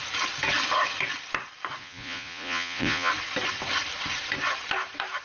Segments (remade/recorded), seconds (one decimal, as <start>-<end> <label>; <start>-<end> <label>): 0.0-1.8 recorded; 1.8-3.1 remade; 3.1-5.2 recorded